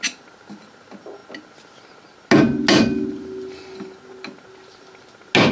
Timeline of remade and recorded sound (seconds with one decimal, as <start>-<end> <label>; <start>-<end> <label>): 0.0-5.5 recorded